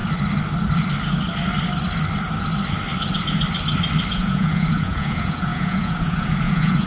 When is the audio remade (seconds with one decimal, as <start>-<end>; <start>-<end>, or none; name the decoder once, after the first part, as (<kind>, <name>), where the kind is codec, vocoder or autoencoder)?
4.1-6.9 (vocoder, Vocos)